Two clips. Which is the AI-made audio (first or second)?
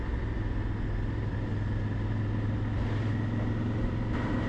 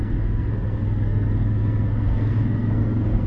second